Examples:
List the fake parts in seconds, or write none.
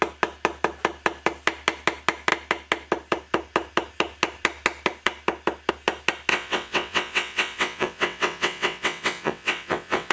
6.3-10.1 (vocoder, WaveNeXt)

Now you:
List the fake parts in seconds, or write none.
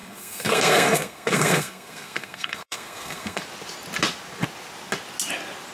0.0-3.4 (codec, SNAC)